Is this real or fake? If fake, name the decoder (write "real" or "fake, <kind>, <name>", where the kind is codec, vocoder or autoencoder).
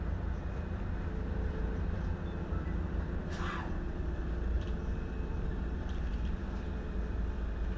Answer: fake, vocoder, BigVGAN v2